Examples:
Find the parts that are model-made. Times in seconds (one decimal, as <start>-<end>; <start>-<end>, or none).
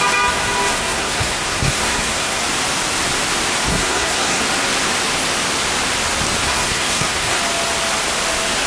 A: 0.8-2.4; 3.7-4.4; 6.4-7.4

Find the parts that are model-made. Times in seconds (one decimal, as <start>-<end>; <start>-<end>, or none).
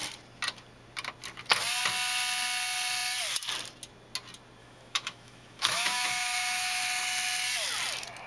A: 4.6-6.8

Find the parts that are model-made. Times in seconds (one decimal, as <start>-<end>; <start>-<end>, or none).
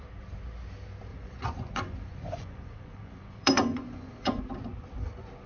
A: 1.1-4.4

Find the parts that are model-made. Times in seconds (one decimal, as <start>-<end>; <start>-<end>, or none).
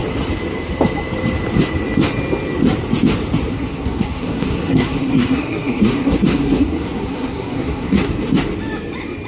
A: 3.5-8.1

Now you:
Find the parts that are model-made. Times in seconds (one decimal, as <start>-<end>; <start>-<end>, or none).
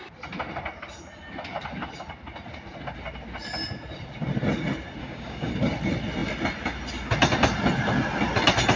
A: 5.0-5.5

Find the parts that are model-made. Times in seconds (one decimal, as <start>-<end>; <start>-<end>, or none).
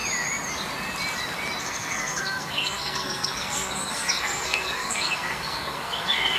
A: 1.6-6.4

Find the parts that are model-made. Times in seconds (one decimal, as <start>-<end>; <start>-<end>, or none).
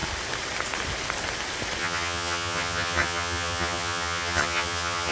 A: 1.8-5.1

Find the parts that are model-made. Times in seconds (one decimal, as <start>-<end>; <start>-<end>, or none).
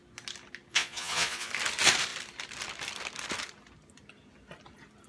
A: 0.7-1.5